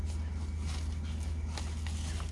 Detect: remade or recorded recorded